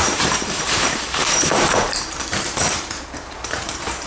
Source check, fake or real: fake